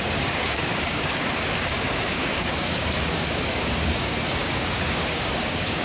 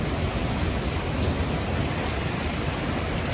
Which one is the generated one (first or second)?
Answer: first